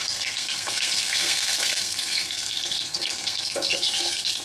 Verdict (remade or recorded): remade